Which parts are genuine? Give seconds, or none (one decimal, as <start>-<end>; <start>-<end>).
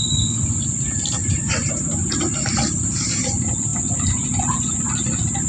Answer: 0.0-1.2; 2.2-5.5